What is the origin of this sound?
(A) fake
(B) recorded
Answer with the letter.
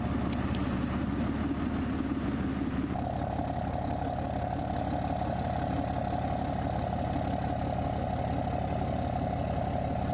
B